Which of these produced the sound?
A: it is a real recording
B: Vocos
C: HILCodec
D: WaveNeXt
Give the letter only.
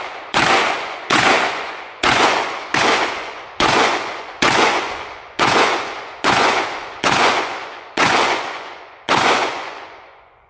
B